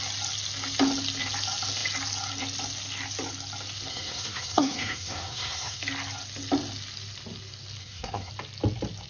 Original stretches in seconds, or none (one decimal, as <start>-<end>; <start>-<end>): 0.0-3.9; 5.8-7.8; 8.3-9.1